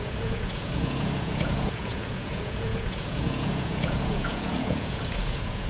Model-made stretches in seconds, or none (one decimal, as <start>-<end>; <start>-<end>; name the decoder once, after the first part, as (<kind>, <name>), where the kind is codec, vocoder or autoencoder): 0.0-5.7 (vocoder, Vocos)